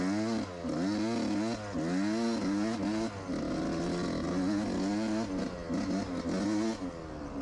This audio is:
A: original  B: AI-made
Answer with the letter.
A